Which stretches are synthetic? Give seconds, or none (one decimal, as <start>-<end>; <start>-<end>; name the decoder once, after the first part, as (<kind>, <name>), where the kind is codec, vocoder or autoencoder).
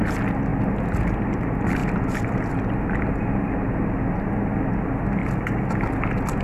none